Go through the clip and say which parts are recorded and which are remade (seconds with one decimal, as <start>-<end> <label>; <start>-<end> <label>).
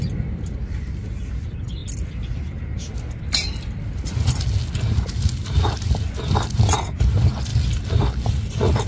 0.0-8.9 recorded